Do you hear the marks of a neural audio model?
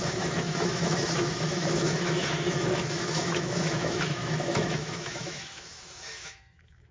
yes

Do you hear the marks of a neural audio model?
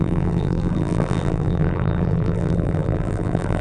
yes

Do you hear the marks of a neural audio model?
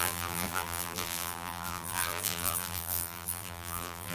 yes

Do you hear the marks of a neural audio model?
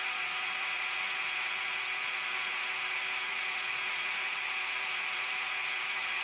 yes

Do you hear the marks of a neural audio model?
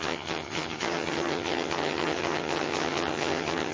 yes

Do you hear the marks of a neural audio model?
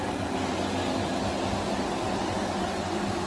no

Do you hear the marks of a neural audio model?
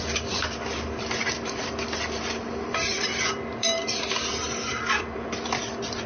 yes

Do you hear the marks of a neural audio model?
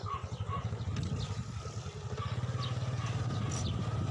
no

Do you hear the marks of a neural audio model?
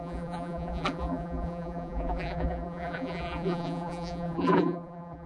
yes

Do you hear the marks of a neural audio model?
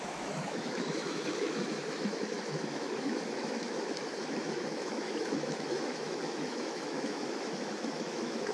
yes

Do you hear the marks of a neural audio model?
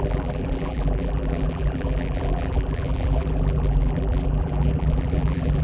yes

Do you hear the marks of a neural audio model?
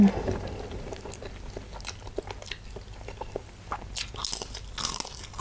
no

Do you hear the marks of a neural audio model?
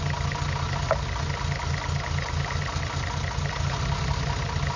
no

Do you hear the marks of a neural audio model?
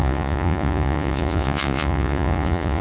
yes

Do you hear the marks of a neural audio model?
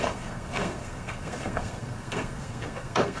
yes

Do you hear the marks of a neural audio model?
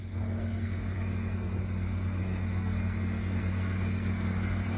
yes